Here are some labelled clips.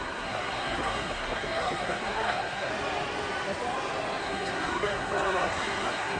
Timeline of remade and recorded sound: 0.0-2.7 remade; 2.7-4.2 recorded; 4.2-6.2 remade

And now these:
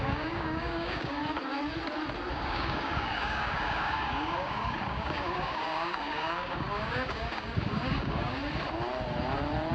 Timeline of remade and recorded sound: 0.0-1.2 remade; 1.2-2.3 recorded; 2.3-8.4 remade; 8.4-9.7 recorded

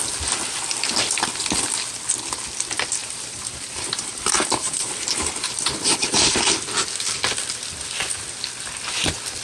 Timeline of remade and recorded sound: 0.0-3.0 recorded; 3.0-6.4 remade; 6.4-9.4 recorded

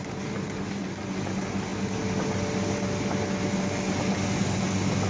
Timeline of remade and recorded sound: 0.0-5.1 recorded